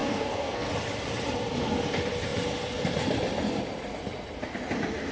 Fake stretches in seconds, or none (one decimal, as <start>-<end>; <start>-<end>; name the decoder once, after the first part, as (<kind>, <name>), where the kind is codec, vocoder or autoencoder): 0.0-0.7 (codec, SNAC)